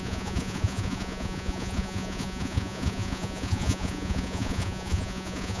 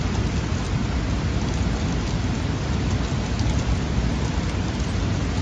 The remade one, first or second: first